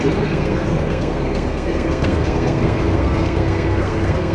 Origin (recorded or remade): remade